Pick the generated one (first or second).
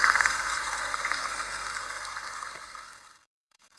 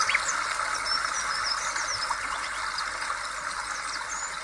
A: first